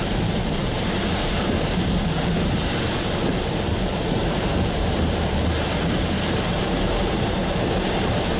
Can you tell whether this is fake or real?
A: fake